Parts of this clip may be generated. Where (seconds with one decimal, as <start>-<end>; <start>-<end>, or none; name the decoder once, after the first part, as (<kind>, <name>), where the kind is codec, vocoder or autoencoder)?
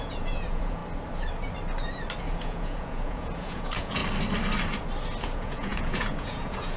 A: 0.0-0.8 (vocoder, Vocos); 2.2-4.0; 5.2-6.8